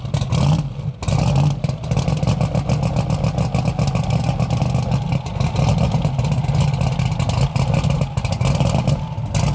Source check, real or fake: real